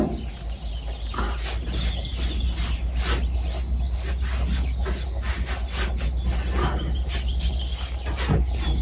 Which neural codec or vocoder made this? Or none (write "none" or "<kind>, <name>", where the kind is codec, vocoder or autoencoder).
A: none